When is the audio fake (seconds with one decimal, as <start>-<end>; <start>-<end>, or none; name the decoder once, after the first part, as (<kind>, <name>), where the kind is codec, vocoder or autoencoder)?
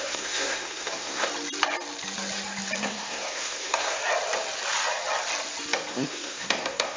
0.0-1.3 (codec, SNAC); 2.8-4.0; 5.9-7.0